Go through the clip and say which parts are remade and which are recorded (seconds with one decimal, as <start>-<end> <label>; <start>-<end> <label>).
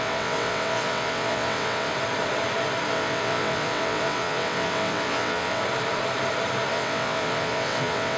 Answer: 0.0-1.9 remade; 1.9-2.9 recorded; 2.9-5.6 remade; 5.6-6.7 recorded; 6.7-8.2 remade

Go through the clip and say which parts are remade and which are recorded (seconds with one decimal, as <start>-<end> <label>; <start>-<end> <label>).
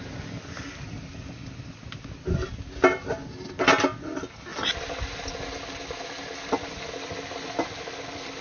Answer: 0.0-8.4 recorded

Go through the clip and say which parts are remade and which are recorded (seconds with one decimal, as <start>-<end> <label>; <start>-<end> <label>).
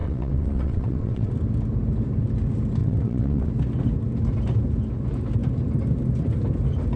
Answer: 0.0-1.3 remade; 1.3-2.8 recorded; 2.8-3.5 remade; 3.5-7.0 recorded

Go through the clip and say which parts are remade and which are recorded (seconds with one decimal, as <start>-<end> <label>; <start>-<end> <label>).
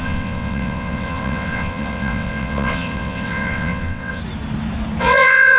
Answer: 0.0-4.2 remade; 4.2-5.0 recorded; 5.0-5.6 remade